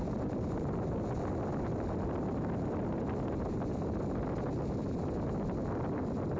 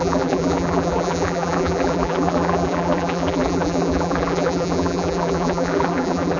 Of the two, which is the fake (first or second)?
second